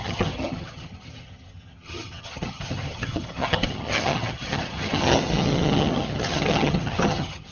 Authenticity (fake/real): fake